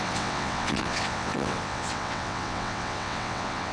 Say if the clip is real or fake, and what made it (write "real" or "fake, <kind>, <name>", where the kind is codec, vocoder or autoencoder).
fake, vocoder, WaveNeXt